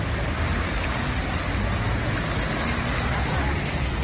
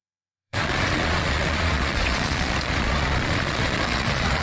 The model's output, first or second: second